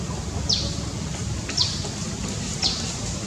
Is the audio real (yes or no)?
yes